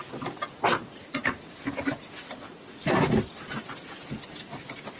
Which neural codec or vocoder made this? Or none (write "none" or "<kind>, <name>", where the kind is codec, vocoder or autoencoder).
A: none